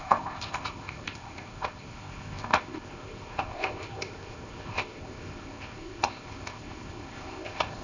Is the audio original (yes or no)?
no